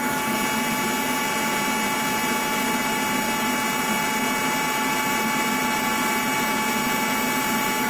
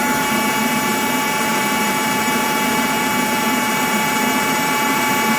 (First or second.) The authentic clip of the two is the first